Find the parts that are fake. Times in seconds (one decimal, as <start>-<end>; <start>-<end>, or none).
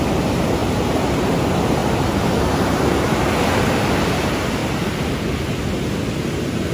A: 0.6-1.4